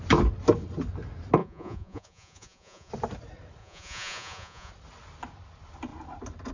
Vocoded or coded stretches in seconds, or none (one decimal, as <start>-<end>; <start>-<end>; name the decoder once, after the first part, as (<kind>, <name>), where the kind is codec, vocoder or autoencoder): 1.4-2.9 (vocoder, Vocos); 3.6-4.7